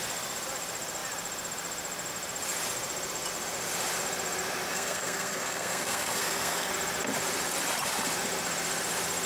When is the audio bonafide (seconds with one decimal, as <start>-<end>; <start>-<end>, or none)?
0.0-4.7; 6.7-9.3